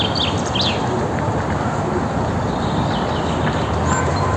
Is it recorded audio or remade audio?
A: recorded